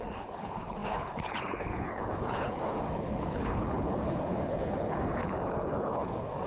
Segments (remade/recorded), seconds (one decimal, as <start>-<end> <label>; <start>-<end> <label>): 0.0-6.5 remade

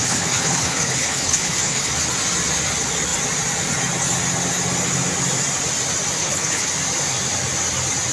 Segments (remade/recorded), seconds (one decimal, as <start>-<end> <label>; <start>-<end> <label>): 0.0-1.9 remade; 1.9-6.2 recorded; 6.2-6.7 remade; 6.7-8.1 recorded

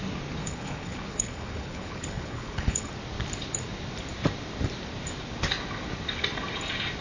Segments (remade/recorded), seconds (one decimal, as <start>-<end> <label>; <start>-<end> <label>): 0.0-0.4 recorded; 0.4-2.9 remade; 2.9-7.0 recorded

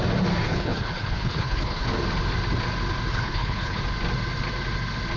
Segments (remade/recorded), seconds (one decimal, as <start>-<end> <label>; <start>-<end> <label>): 0.0-0.5 recorded; 0.5-1.9 remade; 1.9-3.1 recorded; 3.1-3.8 remade; 3.8-5.2 recorded

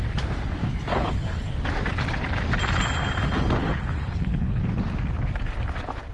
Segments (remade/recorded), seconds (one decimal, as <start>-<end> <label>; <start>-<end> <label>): 0.0-0.9 recorded; 0.9-1.5 remade; 1.5-3.6 recorded; 3.6-4.6 remade; 4.6-6.1 recorded

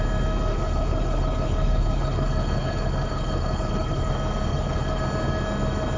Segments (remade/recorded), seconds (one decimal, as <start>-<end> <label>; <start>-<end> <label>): 0.0-0.5 recorded; 0.5-4.1 remade; 4.1-4.5 recorded; 4.5-5.0 remade; 5.0-6.0 recorded